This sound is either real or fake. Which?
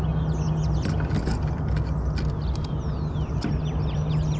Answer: real